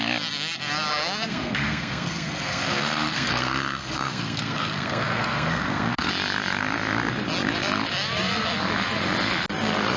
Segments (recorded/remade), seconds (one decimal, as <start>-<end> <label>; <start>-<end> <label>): 0.0-0.9 recorded; 0.9-6.1 remade; 6.1-10.0 recorded